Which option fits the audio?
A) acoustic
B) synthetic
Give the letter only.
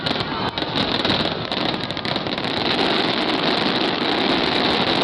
A